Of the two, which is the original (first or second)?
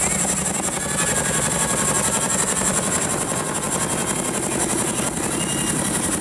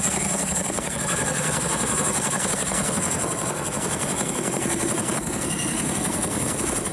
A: first